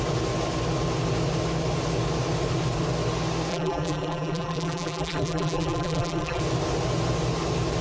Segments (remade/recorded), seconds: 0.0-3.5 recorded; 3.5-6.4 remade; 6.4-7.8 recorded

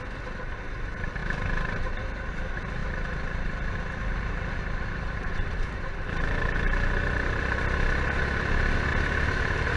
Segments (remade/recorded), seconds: 0.0-2.8 recorded; 2.8-7.6 remade; 7.6-8.9 recorded; 8.9-9.8 remade

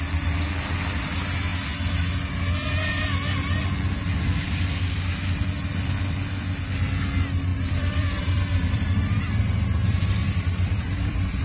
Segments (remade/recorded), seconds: 0.0-7.5 recorded; 7.5-9.0 remade; 9.0-10.2 recorded; 10.2-11.4 remade

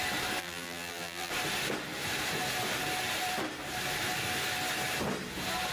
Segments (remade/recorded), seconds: 0.0-0.4 recorded; 0.4-1.3 remade; 1.3-5.7 recorded